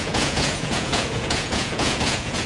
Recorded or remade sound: remade